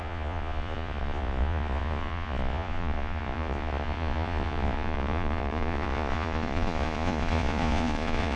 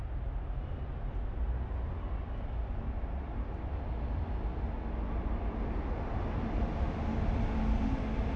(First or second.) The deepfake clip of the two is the first